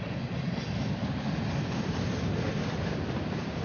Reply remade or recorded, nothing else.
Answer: recorded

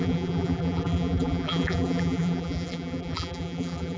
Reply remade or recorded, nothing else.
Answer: remade